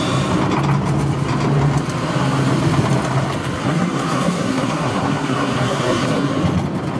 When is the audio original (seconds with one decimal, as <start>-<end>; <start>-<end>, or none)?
0.0-3.6; 6.3-7.0